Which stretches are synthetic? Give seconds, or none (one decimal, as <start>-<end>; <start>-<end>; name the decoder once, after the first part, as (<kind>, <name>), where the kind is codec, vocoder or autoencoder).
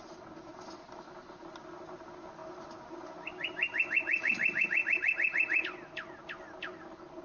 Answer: none